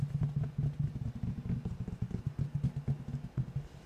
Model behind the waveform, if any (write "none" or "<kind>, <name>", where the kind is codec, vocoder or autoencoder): none